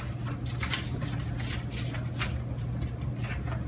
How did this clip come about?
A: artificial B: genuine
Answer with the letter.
B